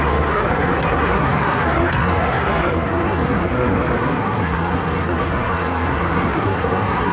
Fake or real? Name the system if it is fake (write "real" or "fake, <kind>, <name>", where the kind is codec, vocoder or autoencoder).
fake, codec, SNAC